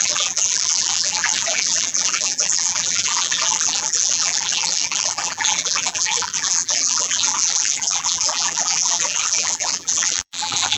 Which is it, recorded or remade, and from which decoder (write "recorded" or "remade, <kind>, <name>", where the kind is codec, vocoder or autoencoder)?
remade, vocoder, BigVGAN v2